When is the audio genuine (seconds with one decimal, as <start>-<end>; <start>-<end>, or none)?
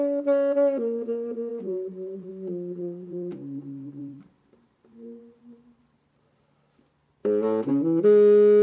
0.0-1.5; 2.3-2.8; 5.8-8.6